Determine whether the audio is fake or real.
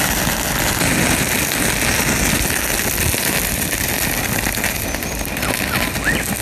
real